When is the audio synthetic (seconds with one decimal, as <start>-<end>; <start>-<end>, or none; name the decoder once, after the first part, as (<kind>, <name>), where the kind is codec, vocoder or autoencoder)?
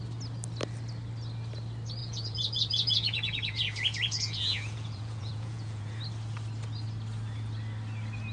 2.0-6.0 (vocoder, Vocos)